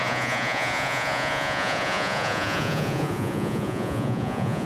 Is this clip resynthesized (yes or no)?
yes